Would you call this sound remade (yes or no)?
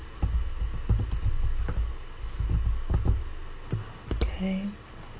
no